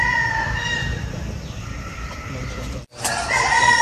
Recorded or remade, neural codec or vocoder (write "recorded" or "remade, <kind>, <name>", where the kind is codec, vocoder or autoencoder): remade, vocoder, BigVGAN v2